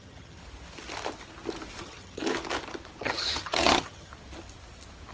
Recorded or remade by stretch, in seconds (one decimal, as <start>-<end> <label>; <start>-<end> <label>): 0.0-0.4 remade; 0.4-1.8 recorded; 1.8-2.2 remade; 2.2-3.0 recorded; 3.0-4.1 remade; 4.1-5.1 recorded

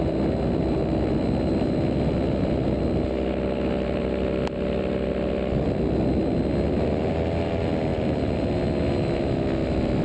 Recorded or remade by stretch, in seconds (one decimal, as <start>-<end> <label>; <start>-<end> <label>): 0.0-10.0 recorded

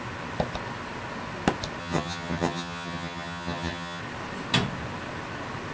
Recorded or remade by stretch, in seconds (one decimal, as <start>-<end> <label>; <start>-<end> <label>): 0.0-1.8 recorded; 1.8-4.0 remade; 4.0-5.7 recorded

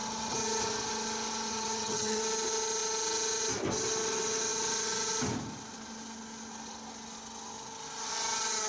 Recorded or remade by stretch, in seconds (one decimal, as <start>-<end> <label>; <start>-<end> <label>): 0.0-1.5 recorded; 1.5-2.2 remade; 2.2-8.7 recorded